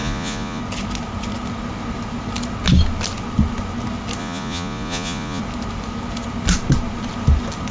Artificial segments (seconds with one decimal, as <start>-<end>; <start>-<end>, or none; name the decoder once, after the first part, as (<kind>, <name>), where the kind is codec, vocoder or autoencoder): 0.0-0.6 (vocoder, Vocos); 4.2-5.4